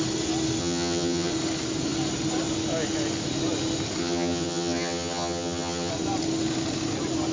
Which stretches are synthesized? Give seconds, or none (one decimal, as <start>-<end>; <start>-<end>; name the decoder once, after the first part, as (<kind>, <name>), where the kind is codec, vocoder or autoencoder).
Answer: 0.6-1.3 (vocoder, HiFi-GAN); 4.0-5.9